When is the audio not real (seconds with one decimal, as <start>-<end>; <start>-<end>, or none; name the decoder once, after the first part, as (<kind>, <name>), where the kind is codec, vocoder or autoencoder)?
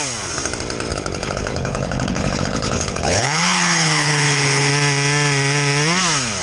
0.9-4.7 (codec, HILCodec)